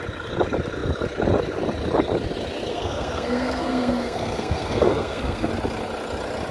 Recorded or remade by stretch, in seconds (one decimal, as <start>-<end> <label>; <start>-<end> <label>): 0.0-2.7 recorded; 2.7-5.5 remade; 5.5-6.5 recorded